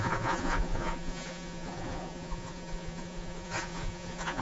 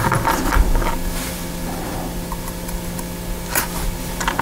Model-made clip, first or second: first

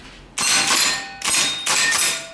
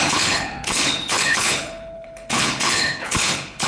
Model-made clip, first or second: second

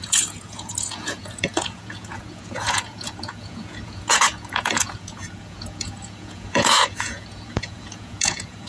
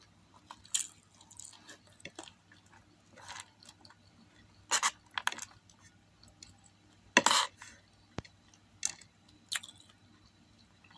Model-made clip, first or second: first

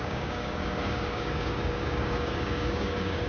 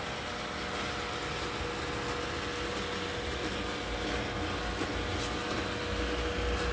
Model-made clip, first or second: first